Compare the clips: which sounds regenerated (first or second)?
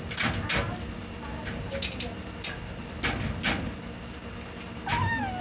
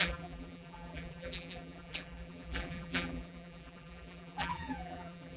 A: second